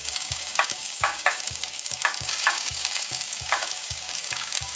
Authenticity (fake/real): fake